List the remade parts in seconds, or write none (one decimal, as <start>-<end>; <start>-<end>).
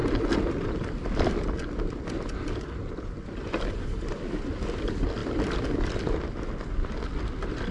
0.0-1.3